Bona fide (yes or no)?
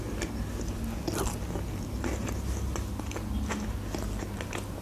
yes